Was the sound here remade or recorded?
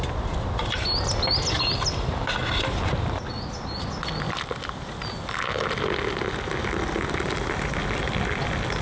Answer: recorded